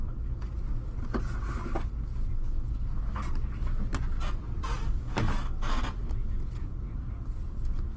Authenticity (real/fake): real